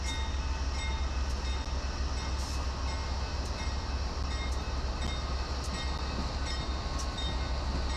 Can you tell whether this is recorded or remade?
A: recorded